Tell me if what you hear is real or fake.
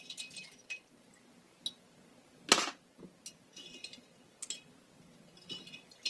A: real